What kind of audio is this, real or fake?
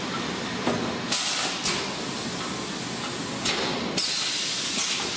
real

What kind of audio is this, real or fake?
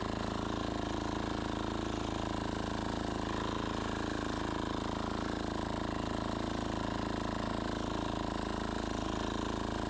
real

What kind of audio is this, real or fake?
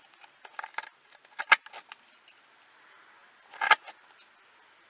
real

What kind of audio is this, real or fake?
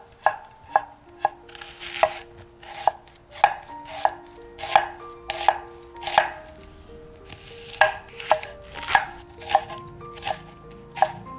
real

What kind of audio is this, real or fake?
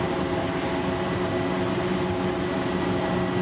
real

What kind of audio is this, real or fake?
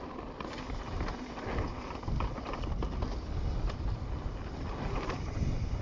real